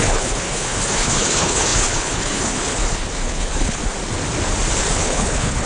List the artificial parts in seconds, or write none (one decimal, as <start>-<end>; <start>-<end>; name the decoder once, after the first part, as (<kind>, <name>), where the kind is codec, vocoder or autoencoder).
0.0-3.8 (codec, HILCodec); 4.9-5.7